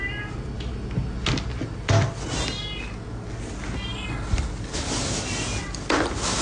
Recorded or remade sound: recorded